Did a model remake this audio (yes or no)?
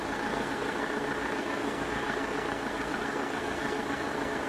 yes